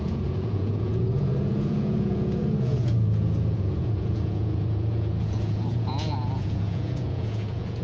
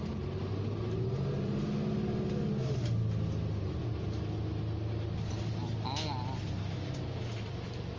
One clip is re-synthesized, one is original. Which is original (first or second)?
second